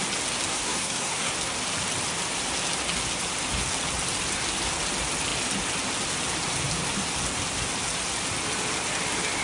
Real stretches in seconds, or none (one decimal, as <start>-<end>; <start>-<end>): 0.0-0.5; 1.3-9.4

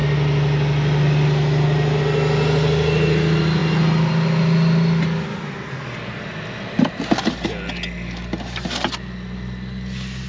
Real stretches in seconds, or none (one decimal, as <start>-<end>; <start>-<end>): 0.0-10.3

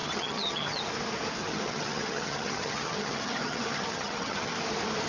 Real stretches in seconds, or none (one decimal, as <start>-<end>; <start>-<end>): 0.8-1.4; 4.5-5.1

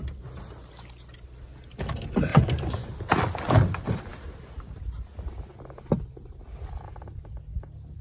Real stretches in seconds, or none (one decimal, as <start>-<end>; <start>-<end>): 0.0-2.3; 2.9-8.0

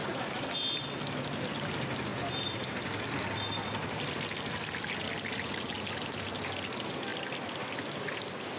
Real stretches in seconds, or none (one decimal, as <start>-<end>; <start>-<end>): 0.0-8.6

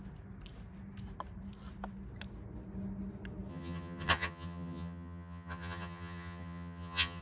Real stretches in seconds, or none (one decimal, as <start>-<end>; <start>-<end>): 0.0-3.5